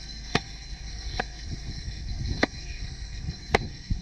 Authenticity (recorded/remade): remade